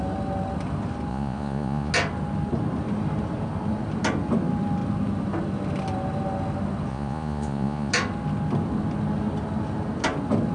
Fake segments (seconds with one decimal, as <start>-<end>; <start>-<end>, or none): 1.1-1.9; 6.9-7.9